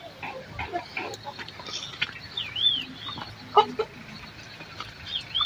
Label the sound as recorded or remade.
recorded